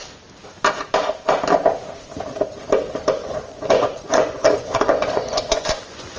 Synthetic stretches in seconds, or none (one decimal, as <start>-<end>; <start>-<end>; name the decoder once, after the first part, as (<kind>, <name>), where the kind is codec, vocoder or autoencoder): 3.2-6.2 (vocoder, Vocos)